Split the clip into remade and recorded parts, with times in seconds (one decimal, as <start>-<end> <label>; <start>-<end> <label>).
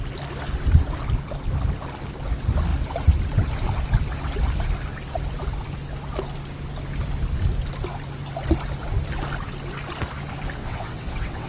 0.0-10.6 recorded; 10.6-11.5 remade